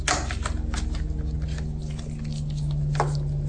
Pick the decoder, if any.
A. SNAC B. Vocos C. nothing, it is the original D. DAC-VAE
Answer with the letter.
C